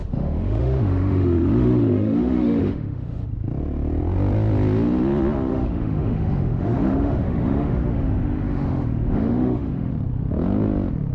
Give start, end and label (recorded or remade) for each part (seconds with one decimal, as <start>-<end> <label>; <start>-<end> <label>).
0.0-3.3 remade; 3.3-5.5 recorded; 5.5-9.9 remade; 9.9-11.1 recorded